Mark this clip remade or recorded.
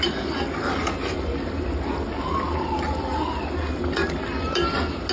recorded